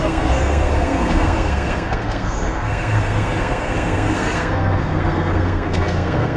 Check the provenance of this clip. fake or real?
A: fake